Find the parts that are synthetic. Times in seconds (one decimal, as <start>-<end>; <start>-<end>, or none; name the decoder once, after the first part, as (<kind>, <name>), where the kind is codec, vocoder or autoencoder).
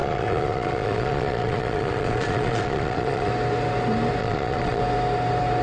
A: 0.0-3.3 (vocoder, Vocos); 4.2-4.8